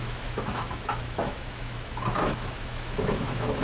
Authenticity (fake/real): fake